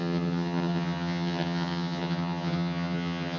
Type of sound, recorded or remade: remade